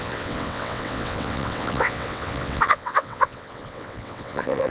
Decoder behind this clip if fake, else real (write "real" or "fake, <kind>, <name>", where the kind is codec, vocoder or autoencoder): fake, vocoder, WaveNeXt